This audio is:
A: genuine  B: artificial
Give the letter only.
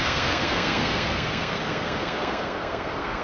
B